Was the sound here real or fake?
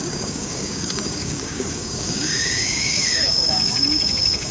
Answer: fake